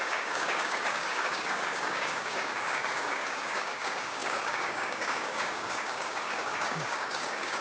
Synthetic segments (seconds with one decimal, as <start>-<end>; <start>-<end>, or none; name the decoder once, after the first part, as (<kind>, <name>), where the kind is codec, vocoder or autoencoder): 0.0-7.6 (codec, DAC)